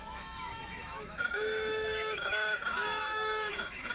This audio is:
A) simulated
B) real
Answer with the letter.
A